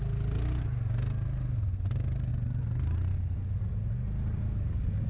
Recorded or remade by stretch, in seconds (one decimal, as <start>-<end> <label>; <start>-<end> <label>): 0.0-2.3 recorded; 2.3-3.5 remade; 3.5-5.1 recorded